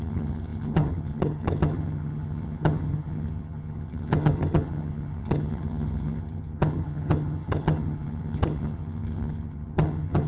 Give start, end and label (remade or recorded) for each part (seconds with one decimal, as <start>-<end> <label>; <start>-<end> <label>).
0.0-10.3 remade